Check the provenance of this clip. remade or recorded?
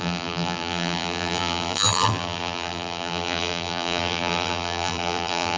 remade